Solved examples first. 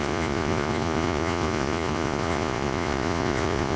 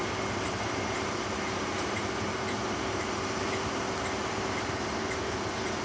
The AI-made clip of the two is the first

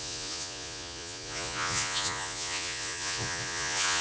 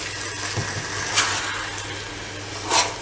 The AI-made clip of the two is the first